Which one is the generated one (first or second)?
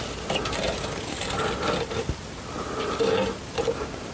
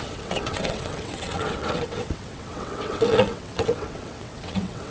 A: second